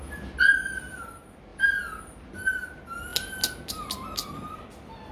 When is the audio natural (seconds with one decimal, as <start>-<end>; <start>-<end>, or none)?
0.0-4.2